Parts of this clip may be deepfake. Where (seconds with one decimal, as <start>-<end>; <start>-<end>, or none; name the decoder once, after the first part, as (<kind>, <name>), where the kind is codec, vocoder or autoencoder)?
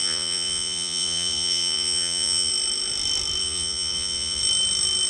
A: 0.0-2.5 (vocoder, Vocos); 3.4-4.4